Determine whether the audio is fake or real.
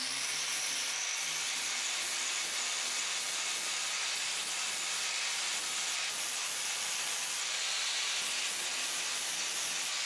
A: real